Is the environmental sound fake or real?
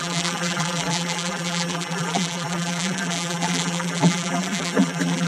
fake